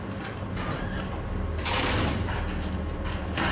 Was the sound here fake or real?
fake